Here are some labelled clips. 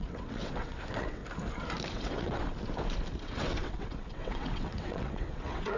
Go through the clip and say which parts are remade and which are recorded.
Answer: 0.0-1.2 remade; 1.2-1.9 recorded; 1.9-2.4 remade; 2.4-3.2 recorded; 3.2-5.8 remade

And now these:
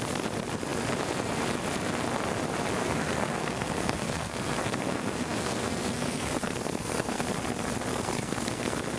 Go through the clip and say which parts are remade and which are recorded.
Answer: 0.0-2.8 recorded; 2.8-7.2 remade; 7.2-7.9 recorded; 7.9-9.0 remade

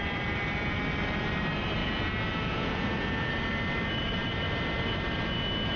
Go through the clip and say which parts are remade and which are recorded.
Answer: 0.0-1.8 recorded; 1.8-3.3 remade; 3.3-5.8 recorded

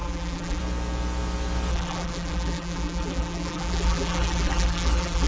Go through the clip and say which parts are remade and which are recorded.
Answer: 0.0-0.6 remade; 0.6-1.7 recorded; 1.7-5.3 remade

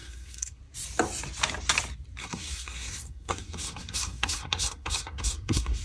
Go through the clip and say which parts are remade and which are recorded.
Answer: 0.0-0.6 remade; 0.6-2.2 recorded; 2.2-5.8 remade